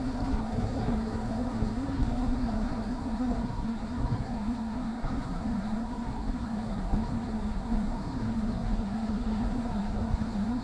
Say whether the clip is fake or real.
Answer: fake